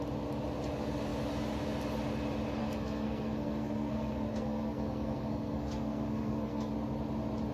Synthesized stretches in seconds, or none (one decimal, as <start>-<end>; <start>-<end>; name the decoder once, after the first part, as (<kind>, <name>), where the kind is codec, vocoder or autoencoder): 2.6-6.7 (codec, SNAC)